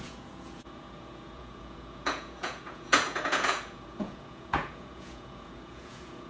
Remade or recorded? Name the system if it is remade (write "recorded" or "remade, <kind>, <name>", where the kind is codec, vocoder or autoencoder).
remade, vocoder, Vocos